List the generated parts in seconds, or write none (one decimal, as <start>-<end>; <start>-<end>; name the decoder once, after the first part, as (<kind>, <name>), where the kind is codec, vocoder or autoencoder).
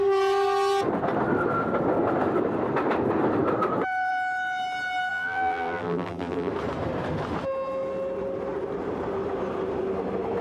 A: 5.1-6.5 (vocoder, BigVGAN v2)